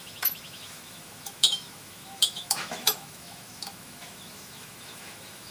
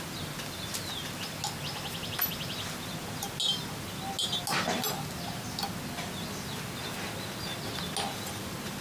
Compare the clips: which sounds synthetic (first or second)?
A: first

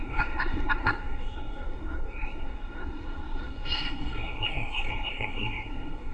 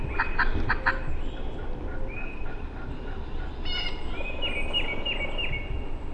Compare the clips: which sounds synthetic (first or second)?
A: first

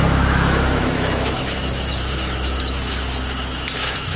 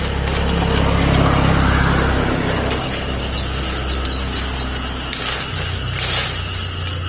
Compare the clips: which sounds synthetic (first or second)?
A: first